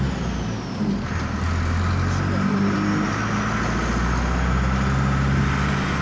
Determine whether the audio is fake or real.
real